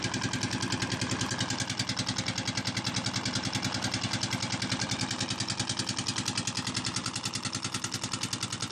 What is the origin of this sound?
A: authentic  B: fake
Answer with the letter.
A